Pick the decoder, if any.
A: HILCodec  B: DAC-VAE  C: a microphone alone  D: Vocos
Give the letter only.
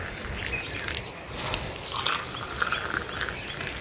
C